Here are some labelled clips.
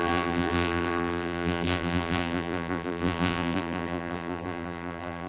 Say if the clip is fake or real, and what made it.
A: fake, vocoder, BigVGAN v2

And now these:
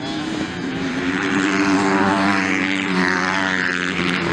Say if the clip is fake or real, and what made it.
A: fake, vocoder, BigVGAN v2